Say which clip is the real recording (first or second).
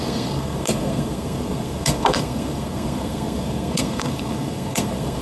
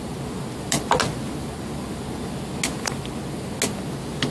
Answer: second